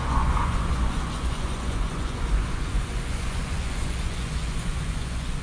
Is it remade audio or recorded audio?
remade